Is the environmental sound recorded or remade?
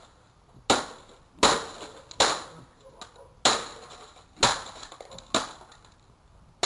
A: recorded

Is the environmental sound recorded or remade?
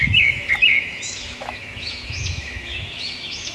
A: remade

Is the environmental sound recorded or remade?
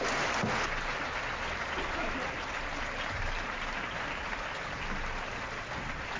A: recorded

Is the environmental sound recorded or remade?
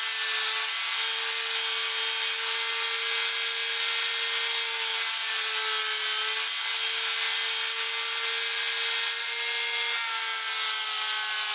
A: recorded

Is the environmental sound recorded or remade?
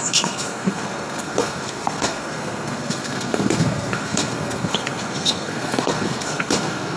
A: remade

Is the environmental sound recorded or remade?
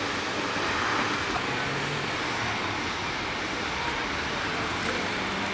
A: recorded